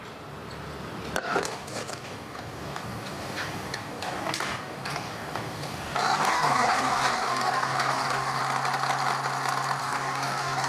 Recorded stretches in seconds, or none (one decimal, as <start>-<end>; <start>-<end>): 0.0-1.2; 8.4-9.8